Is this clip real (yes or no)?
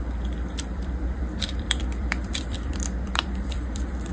no